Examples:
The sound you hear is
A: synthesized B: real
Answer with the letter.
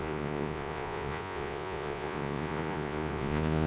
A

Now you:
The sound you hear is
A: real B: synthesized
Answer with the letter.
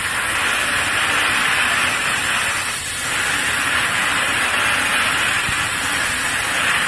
A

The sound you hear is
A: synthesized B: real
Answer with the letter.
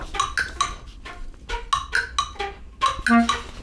B